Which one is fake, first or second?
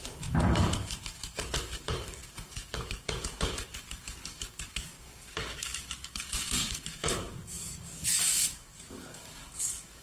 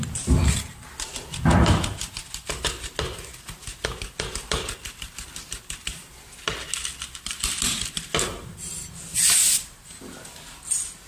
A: first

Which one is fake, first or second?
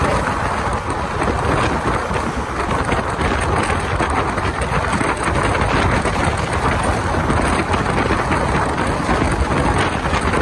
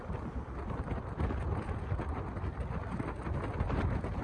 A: second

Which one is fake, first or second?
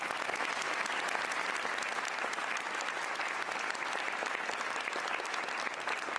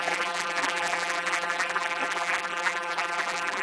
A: second